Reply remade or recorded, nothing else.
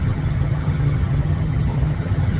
remade